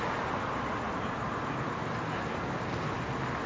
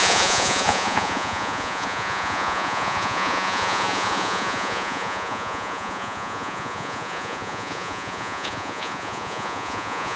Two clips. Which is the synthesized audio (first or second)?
second